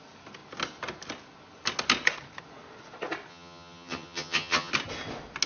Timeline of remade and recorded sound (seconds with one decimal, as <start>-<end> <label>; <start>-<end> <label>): 0.0-3.3 recorded; 3.3-4.7 remade; 4.7-5.5 recorded